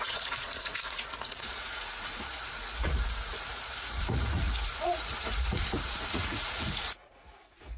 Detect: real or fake fake